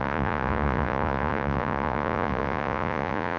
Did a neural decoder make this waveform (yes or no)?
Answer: yes